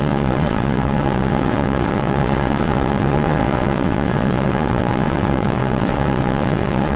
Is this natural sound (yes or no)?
no